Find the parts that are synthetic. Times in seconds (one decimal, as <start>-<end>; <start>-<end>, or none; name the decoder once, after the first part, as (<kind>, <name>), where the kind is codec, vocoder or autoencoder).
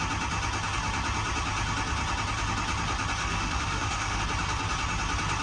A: 3.2-4.2 (autoencoder, DAC-VAE)